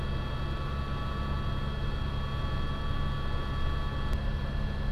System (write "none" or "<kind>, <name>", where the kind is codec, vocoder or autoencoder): none